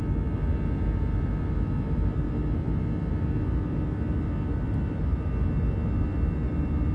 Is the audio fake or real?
real